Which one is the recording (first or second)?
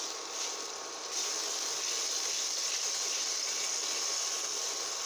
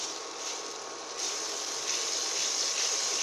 second